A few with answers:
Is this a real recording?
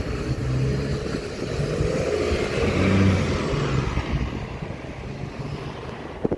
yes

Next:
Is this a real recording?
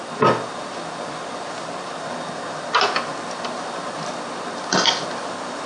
yes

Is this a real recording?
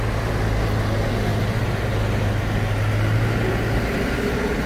yes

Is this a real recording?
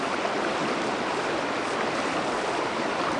yes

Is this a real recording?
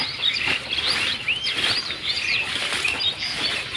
yes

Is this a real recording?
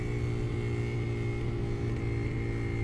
yes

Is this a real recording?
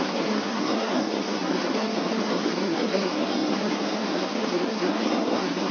no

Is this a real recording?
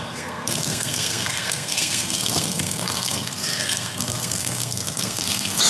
no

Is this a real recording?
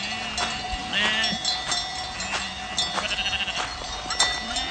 yes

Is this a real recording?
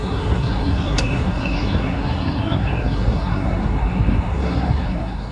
no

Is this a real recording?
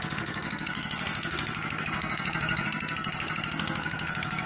no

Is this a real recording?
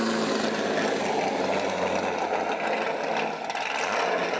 yes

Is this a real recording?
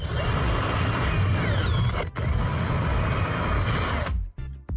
yes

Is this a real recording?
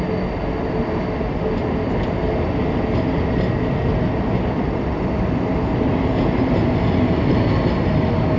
yes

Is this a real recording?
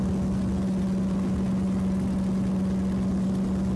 yes